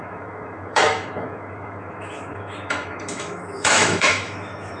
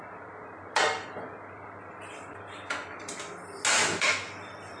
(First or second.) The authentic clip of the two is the second